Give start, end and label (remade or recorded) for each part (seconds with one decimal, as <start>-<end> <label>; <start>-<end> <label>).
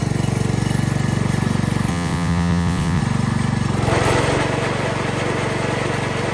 0.0-1.9 recorded; 1.9-3.0 remade; 3.0-6.3 recorded